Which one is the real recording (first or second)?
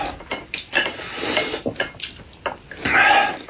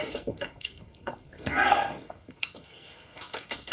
first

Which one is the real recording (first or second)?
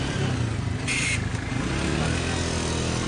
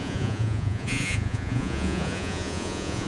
first